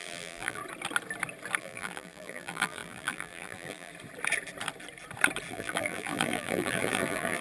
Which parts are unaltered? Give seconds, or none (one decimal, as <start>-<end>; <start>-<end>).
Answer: 0.6-1.6; 3.9-5.5